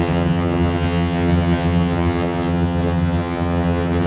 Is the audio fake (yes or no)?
yes